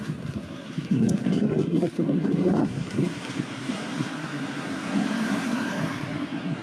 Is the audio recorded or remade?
remade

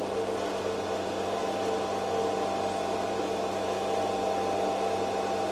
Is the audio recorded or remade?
recorded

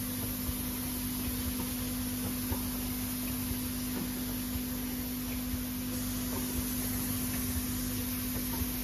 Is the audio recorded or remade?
recorded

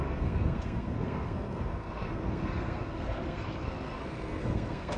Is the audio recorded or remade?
remade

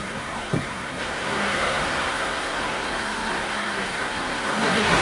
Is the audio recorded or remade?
remade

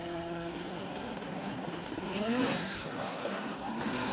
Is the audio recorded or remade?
remade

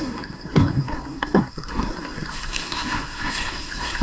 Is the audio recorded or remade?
remade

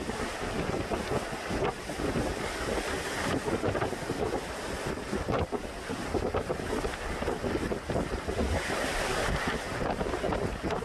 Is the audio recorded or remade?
recorded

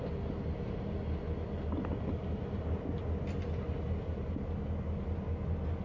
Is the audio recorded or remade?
recorded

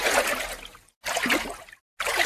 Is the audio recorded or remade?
recorded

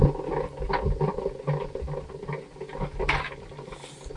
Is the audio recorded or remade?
recorded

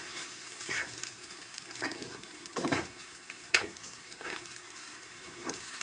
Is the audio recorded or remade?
remade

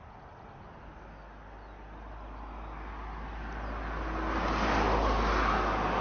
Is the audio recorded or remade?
recorded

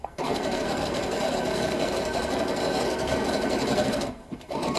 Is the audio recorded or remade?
remade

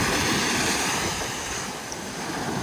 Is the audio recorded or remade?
recorded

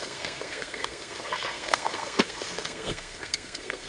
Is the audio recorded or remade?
remade